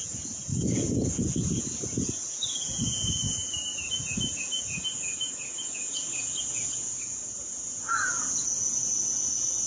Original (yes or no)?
no